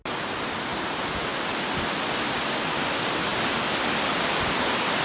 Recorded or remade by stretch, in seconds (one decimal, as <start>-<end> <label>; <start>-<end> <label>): 0.0-5.0 recorded